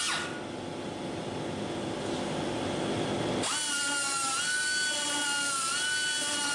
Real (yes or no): yes